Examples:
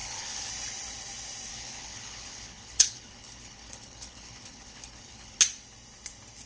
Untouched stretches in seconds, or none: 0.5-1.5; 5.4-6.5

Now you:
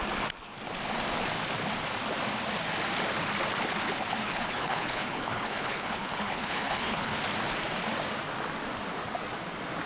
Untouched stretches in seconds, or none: 0.0-4.2; 7.2-9.9

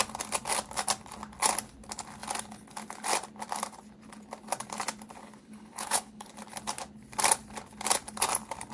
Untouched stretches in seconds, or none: 0.0-5.2; 6.3-8.7